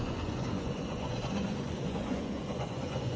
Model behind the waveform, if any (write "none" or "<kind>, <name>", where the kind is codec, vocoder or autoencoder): vocoder, Vocos